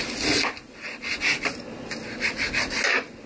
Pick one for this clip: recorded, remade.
recorded